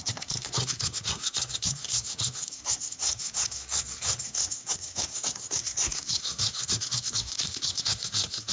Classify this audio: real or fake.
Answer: fake